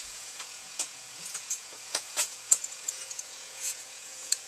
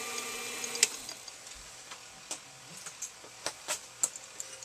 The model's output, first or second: first